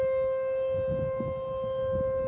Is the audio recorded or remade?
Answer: recorded